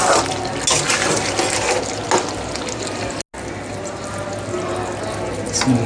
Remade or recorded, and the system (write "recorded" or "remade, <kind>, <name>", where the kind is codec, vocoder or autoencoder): recorded